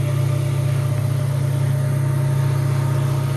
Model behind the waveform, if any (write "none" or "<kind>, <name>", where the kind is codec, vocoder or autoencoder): none